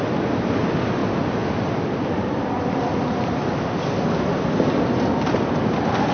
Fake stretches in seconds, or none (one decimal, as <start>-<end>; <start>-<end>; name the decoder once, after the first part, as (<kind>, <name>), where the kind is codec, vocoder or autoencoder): none